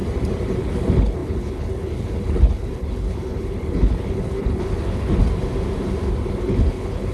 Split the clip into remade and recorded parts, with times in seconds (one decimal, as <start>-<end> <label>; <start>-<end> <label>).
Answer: 0.0-0.6 recorded; 0.6-5.2 remade; 5.2-6.4 recorded; 6.4-7.1 remade